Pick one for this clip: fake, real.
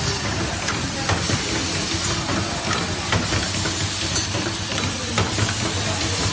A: real